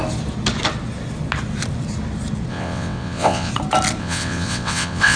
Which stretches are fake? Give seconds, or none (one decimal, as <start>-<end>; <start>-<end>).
2.5-3.5; 4.0-5.2